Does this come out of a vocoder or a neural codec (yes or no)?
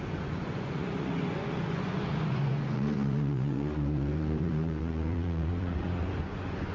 yes